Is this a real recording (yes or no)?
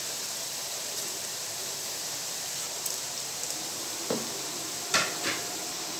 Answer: no